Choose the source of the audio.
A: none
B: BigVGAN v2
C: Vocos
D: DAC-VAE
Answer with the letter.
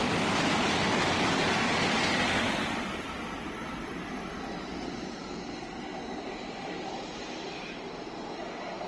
A